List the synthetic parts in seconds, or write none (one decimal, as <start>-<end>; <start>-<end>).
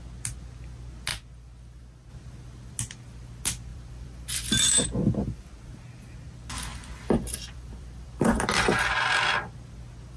3.7-4.8; 6.7-8.5